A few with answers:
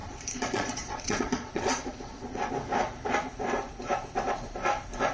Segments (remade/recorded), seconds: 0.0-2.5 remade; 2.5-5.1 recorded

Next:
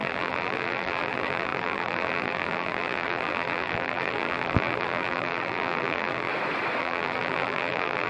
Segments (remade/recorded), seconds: 0.0-6.3 remade; 6.3-6.8 recorded; 6.8-8.1 remade

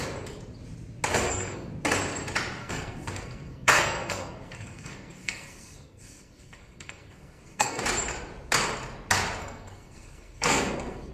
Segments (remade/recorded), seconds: 0.0-1.1 recorded; 1.1-1.7 remade; 1.7-2.6 recorded; 2.6-7.8 remade; 7.8-9.4 recorded; 9.4-11.1 remade

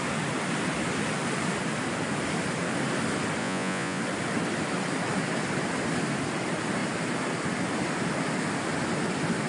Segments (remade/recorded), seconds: 0.0-3.4 recorded; 3.4-4.0 remade; 4.0-9.5 recorded

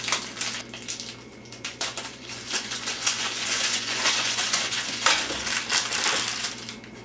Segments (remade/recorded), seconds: 0.0-1.3 recorded; 1.3-5.5 remade; 5.5-7.0 recorded

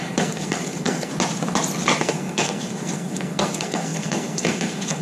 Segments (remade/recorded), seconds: 0.0-1.1 remade; 1.1-2.0 recorded; 2.0-5.0 remade

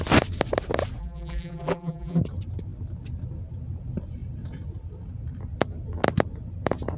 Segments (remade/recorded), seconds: 0.0-1.0 recorded; 1.0-2.2 remade; 2.2-7.0 recorded